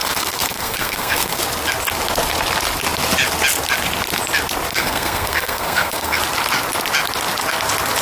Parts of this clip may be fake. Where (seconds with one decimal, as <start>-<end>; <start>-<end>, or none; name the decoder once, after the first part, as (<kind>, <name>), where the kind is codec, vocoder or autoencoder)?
0.0-1.4 (codec, SNAC); 4.7-6.2